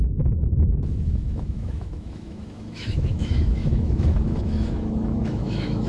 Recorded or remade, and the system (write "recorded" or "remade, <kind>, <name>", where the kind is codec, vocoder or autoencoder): remade, autoencoder, DAC-VAE